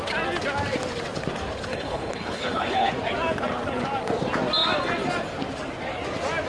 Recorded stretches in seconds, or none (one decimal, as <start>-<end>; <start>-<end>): 0.0-1.7; 2.9-6.5